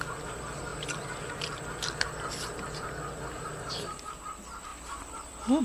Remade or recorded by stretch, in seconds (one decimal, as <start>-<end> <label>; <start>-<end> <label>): 0.0-5.6 recorded